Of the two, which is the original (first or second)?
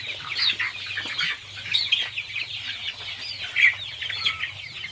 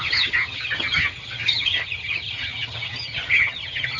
first